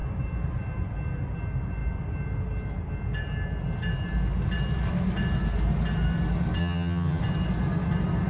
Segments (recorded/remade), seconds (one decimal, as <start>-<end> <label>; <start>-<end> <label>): 0.0-6.6 recorded; 6.6-7.2 remade; 7.2-8.3 recorded